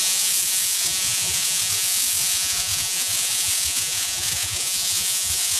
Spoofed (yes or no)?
yes